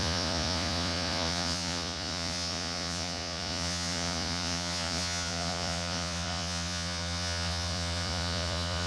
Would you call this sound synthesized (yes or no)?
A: yes